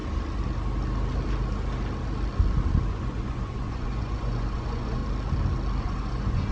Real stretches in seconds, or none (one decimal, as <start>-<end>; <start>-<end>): 0.0-2.9; 5.0-5.8